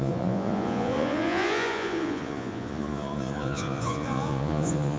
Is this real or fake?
fake